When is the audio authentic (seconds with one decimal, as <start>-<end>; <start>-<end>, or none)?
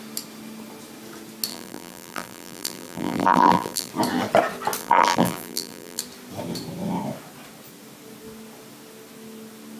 0.0-1.5; 3.9-4.8; 6.0-9.8